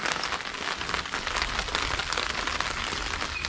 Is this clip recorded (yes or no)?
yes